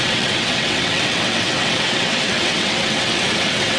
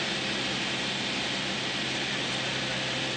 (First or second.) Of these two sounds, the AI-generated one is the first